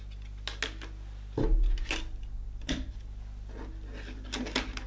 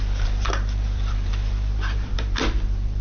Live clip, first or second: first